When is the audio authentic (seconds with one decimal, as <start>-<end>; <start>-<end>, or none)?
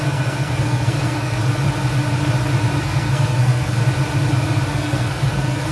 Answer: 1.4-2.8; 3.8-4.7